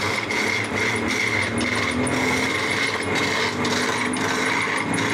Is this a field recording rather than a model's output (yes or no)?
yes